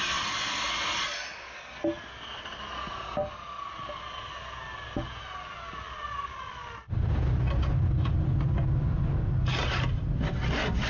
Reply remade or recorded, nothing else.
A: recorded